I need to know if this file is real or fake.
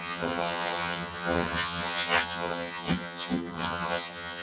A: fake